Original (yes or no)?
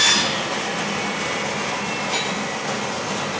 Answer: yes